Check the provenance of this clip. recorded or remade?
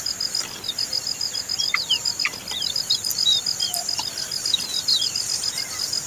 recorded